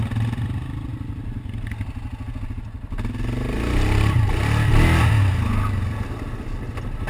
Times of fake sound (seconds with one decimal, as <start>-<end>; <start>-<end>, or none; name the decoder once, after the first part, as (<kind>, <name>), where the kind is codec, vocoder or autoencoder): none